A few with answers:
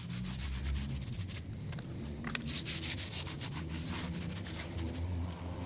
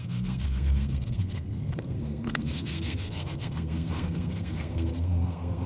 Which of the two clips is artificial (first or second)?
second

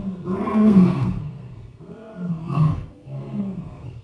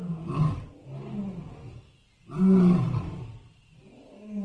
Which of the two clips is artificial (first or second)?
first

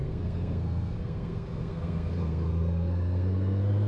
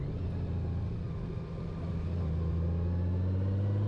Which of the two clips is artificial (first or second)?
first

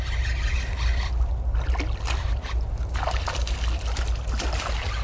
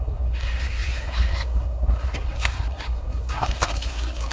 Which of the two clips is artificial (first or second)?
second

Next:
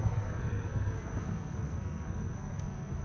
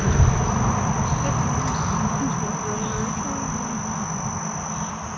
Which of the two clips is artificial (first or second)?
first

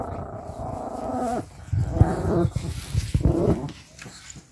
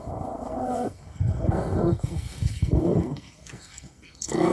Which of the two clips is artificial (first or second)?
second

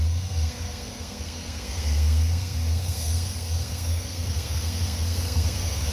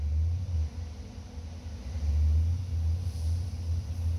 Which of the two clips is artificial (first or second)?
first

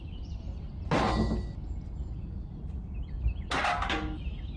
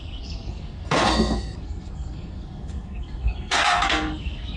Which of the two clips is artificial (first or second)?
second